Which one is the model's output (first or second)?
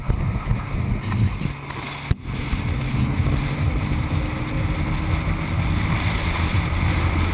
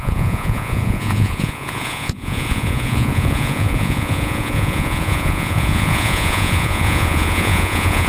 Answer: second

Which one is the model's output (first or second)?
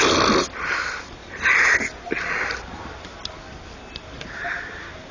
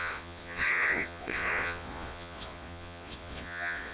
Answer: second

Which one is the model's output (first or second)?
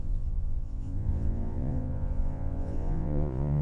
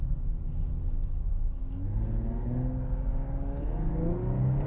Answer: first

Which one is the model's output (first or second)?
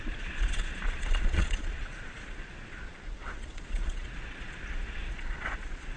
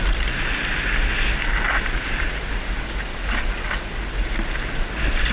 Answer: first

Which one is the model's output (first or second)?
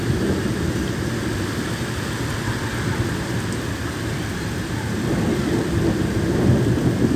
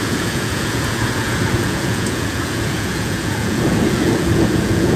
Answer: second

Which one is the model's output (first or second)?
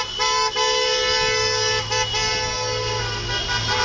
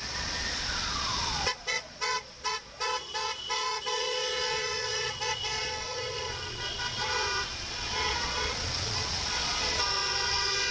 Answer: second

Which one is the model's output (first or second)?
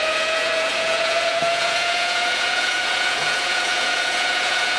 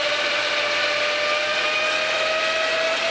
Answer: first